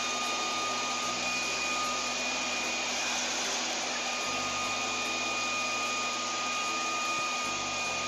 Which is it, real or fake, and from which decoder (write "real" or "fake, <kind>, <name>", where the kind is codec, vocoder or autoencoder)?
real